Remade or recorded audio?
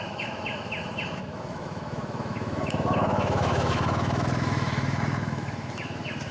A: remade